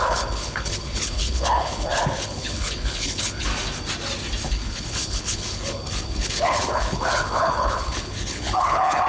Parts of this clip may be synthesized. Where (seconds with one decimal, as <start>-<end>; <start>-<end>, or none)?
0.0-3.5; 4.5-9.1